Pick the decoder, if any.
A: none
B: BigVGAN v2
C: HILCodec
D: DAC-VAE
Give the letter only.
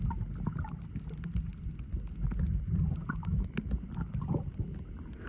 A